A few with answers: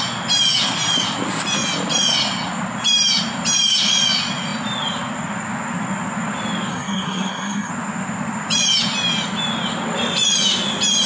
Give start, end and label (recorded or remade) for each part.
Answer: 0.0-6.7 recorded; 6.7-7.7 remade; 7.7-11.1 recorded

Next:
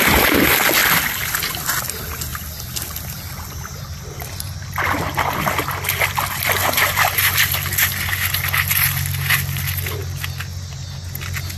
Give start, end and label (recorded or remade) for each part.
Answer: 0.0-11.6 recorded

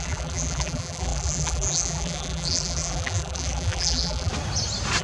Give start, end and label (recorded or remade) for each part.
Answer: 0.0-4.3 remade; 4.3-5.0 recorded

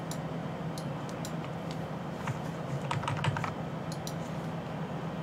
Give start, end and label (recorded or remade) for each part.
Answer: 0.0-5.2 recorded

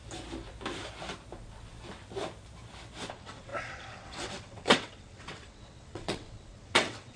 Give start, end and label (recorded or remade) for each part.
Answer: 0.0-3.1 recorded; 3.1-7.2 remade

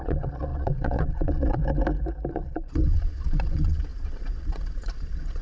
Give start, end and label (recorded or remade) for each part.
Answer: 0.0-1.6 remade; 1.6-2.3 recorded; 2.3-5.4 remade

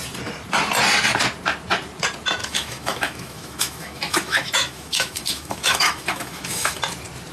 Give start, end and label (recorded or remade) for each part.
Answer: 0.0-2.4 recorded; 2.4-6.8 remade; 6.8-7.3 recorded

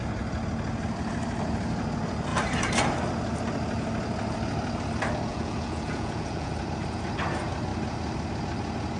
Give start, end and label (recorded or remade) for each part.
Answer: 0.0-5.3 recorded; 5.3-6.5 remade; 6.5-9.0 recorded